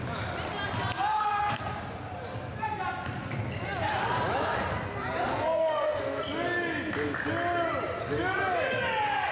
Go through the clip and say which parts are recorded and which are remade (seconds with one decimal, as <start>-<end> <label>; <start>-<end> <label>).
0.0-1.1 recorded; 1.1-1.6 remade; 1.6-5.3 recorded; 5.3-6.2 remade; 6.2-9.3 recorded